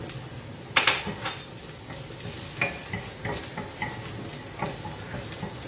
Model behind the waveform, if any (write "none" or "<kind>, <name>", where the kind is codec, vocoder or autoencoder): none